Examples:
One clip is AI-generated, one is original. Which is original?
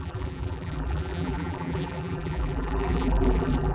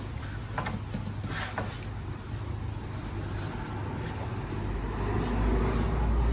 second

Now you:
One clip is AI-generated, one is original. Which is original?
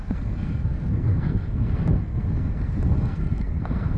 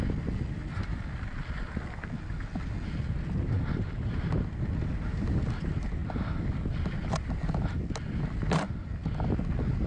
second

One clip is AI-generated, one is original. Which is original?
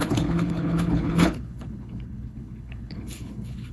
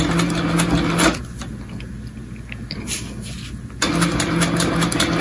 second